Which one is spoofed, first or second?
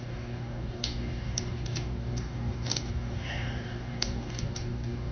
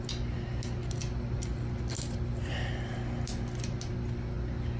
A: first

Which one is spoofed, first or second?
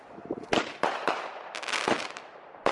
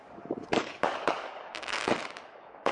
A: second